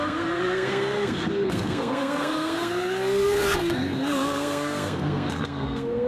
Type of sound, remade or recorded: remade